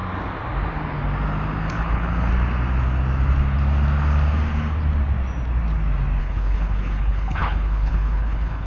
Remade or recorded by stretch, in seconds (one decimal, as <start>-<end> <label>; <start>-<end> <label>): 0.0-1.7 recorded; 1.7-2.3 remade; 2.3-6.2 recorded; 6.2-8.7 remade